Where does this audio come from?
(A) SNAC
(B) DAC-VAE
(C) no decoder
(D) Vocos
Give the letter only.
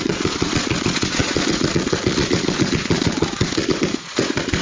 D